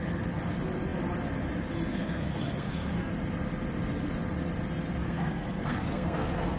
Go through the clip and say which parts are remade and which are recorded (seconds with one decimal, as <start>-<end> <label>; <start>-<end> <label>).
0.0-1.9 recorded; 1.9-3.1 remade; 3.1-5.0 recorded; 5.0-6.6 remade